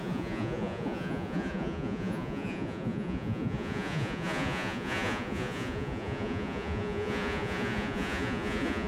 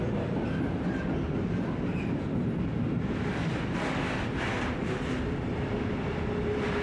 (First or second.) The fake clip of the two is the first